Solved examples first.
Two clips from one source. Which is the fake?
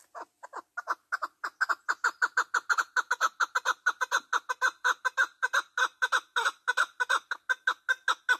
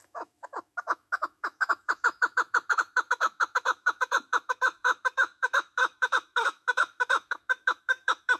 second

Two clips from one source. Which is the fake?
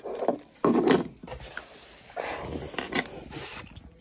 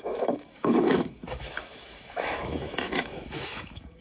second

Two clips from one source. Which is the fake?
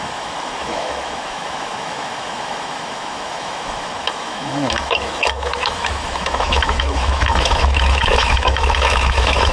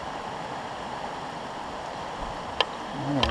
first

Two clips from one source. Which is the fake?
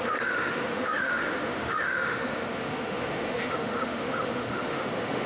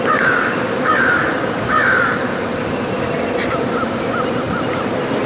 first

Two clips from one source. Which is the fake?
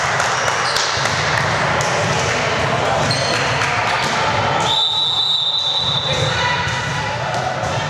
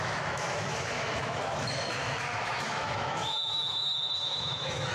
second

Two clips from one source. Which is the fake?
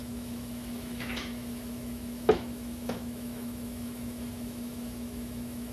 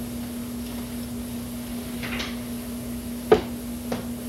first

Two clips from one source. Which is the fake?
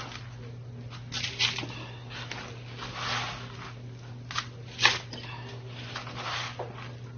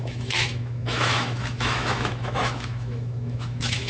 second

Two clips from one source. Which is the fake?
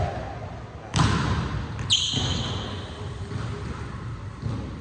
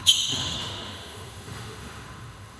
second